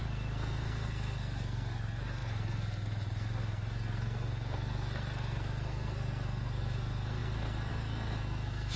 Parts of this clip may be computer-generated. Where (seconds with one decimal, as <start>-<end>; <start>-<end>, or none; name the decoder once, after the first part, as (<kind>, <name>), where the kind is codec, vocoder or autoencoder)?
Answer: 0.0-8.8 (codec, SNAC)